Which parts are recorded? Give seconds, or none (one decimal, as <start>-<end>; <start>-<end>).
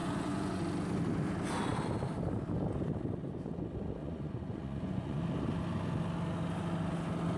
0.6-4.0; 5.2-7.4